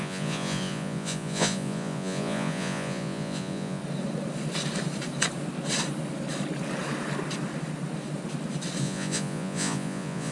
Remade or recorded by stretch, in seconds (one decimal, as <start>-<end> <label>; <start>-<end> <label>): 0.0-3.8 remade; 3.8-8.8 recorded; 8.8-10.3 remade